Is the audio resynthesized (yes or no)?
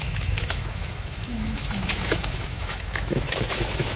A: yes